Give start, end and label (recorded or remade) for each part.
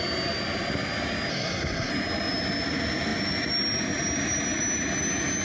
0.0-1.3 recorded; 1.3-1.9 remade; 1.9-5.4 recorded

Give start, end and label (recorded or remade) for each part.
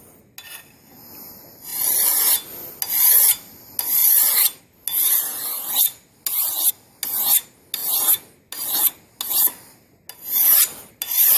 0.0-11.4 recorded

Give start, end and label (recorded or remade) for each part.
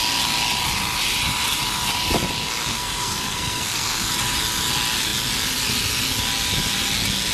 0.0-2.7 recorded; 2.7-4.1 remade; 4.1-7.3 recorded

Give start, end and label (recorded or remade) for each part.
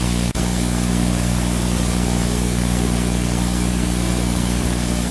0.0-5.1 remade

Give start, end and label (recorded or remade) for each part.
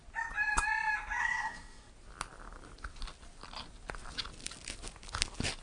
0.0-1.2 recorded; 1.2-1.9 remade; 1.9-5.6 recorded